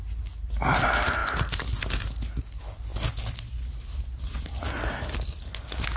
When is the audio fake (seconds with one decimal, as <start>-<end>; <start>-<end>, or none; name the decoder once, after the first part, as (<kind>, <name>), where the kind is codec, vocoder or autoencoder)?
none